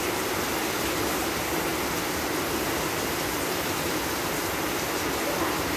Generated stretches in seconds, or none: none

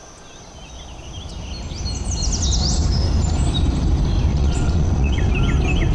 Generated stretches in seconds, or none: 4.3-5.3 (vocoder, WaveNeXt)

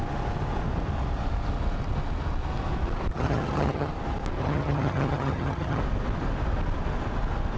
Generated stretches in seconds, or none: 3.1-3.9 (vocoder, HiFi-GAN); 4.4-5.8

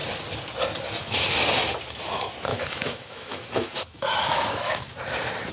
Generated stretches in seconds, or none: 2.5-4.9 (autoencoder, DAC-VAE)

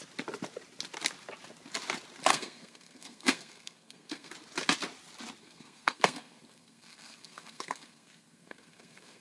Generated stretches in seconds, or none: 2.3-4.3 (codec, SNAC); 5.4-9.2

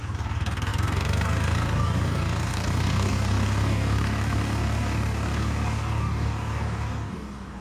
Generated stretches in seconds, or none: 0.0-7.6 (codec, DAC)